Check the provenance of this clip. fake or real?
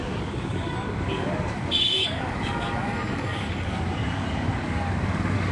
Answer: fake